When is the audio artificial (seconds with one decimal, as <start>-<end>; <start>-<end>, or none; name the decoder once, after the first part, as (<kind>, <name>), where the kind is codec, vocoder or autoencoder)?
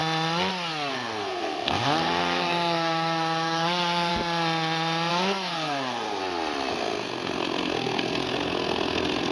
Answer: 0.9-4.1 (codec, SNAC); 5.1-6.2; 6.7-9.3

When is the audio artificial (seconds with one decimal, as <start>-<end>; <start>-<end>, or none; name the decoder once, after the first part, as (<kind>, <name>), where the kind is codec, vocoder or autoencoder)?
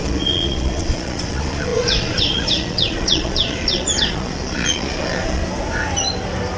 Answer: 0.0-5.4 (vocoder, Vocos)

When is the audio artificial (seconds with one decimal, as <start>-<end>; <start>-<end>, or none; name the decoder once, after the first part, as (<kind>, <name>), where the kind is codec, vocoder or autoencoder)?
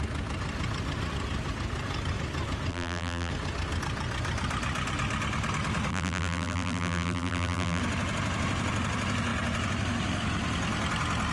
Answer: 2.7-3.3 (vocoder, BigVGAN v2); 5.9-7.8